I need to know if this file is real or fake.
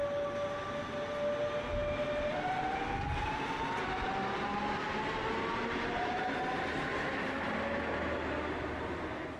real